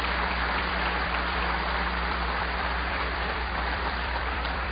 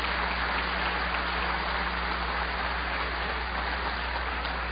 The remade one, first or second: first